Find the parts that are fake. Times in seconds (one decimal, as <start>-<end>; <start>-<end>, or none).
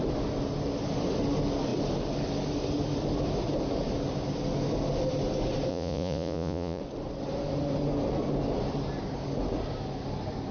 5.7-6.8